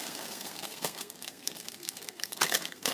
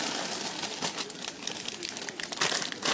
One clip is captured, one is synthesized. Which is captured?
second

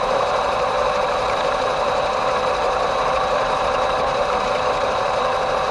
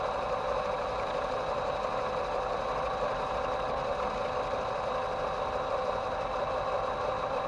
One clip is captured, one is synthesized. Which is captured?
second